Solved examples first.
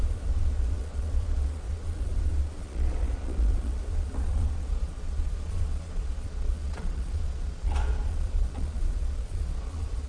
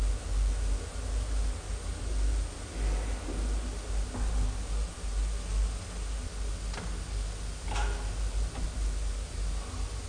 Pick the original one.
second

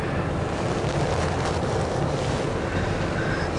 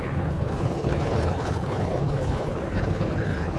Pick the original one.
first